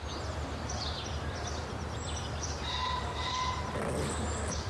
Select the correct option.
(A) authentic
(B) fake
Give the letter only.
A